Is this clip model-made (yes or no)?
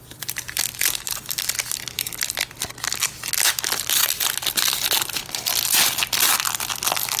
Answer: no